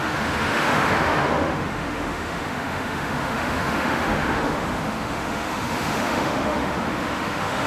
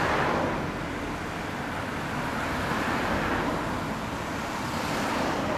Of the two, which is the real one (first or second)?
second